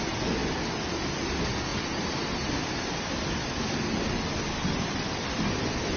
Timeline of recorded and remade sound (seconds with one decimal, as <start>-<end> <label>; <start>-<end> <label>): 0.0-6.0 recorded